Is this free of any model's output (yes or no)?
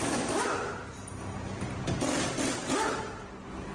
yes